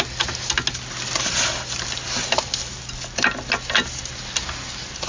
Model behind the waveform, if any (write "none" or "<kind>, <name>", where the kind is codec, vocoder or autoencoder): none